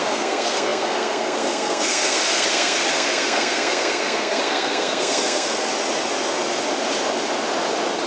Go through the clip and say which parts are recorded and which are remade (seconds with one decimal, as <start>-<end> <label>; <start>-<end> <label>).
0.0-5.7 remade; 5.7-8.1 recorded